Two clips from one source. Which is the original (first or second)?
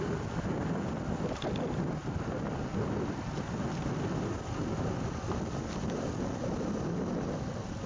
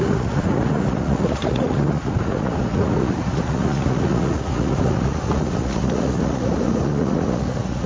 first